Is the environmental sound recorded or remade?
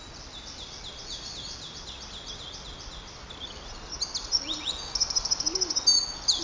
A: recorded